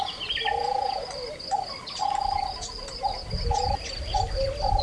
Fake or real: real